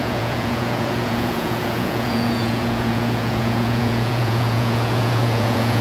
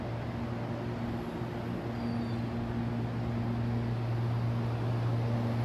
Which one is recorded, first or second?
second